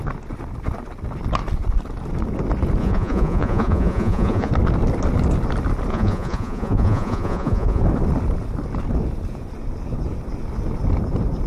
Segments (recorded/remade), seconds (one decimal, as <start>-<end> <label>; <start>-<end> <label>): 0.0-2.8 recorded; 2.8-4.5 remade; 4.5-5.9 recorded; 5.9-7.8 remade; 7.8-11.5 recorded